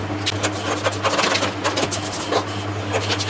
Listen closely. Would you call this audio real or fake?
real